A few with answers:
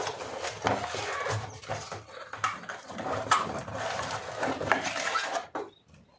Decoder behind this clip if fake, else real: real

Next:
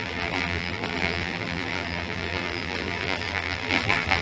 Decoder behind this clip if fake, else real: fake, vocoder, BigVGAN v2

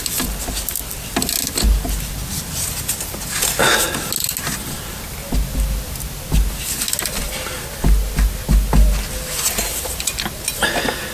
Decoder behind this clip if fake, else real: real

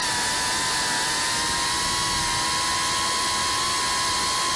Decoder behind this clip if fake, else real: real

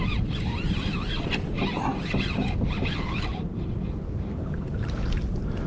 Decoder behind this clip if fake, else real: real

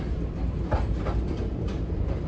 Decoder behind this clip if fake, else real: real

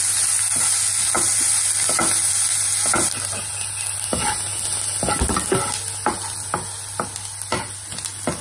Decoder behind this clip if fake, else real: real